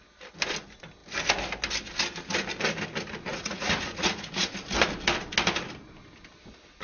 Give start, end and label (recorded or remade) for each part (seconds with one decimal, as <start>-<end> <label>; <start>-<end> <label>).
0.0-3.3 recorded; 3.3-4.4 remade; 4.4-6.8 recorded